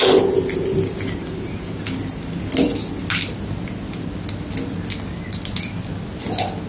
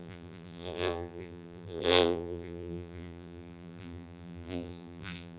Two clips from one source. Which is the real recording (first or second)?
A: first